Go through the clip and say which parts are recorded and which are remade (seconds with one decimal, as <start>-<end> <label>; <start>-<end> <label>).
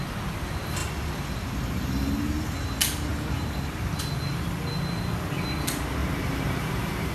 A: 0.0-3.1 recorded; 3.1-4.0 remade; 4.0-6.0 recorded; 6.0-7.1 remade